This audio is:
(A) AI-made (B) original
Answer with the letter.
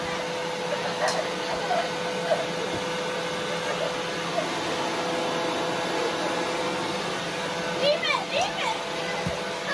B